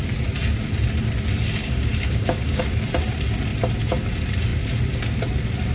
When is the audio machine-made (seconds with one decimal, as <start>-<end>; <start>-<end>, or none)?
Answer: 1.6-2.6